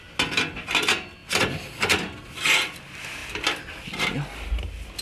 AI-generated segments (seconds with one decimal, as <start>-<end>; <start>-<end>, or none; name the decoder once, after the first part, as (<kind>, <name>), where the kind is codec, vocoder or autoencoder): none